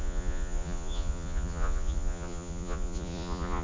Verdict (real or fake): fake